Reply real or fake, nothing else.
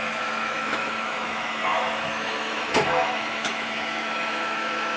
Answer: fake